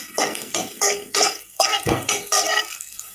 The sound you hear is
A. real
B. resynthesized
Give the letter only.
B